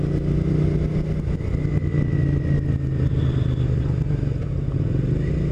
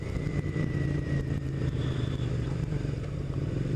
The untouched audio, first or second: first